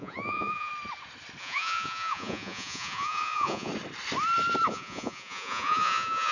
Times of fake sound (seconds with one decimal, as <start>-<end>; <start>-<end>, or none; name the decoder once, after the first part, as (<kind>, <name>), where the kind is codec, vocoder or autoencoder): 0.0-0.7 (vocoder, Vocos); 1.4-3.7; 4.7-6.3